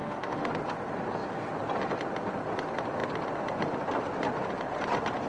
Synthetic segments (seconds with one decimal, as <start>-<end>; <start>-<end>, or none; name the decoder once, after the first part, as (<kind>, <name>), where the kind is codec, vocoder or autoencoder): 0.0-0.5 (autoencoder, DAC-VAE)